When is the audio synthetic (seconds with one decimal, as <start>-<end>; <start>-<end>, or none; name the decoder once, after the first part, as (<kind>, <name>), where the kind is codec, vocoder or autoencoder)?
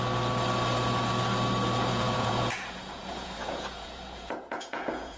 1.9-5.2 (vocoder, Vocos)